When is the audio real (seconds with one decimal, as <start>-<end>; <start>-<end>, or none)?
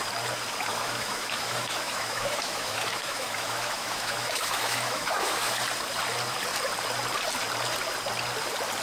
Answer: 0.0-0.7; 5.6-8.8